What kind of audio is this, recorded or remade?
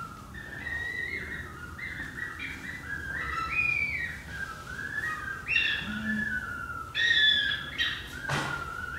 recorded